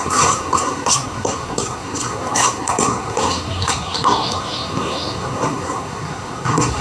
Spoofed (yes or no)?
yes